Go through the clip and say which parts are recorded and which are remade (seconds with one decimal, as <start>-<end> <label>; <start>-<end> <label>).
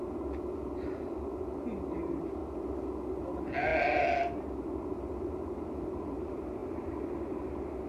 0.0-7.9 recorded